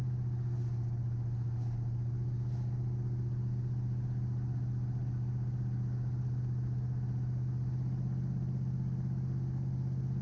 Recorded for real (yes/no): yes